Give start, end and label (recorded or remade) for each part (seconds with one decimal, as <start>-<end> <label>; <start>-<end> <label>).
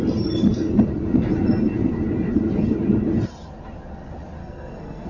0.0-4.4 recorded; 4.4-5.1 remade